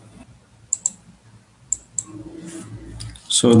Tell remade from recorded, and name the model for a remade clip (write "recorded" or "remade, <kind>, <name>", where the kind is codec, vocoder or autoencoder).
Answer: recorded